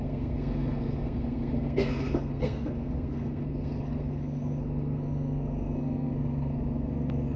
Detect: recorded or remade remade